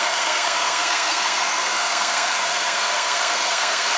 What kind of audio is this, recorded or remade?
remade